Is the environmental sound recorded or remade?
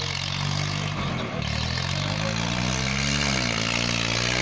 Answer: recorded